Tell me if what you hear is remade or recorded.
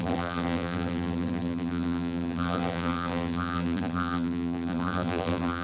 remade